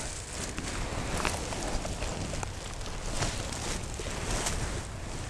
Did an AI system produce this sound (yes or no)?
no